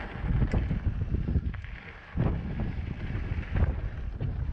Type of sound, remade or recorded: recorded